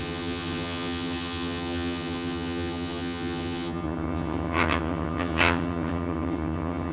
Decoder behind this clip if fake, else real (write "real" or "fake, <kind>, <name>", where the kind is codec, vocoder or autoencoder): fake, vocoder, HiFi-GAN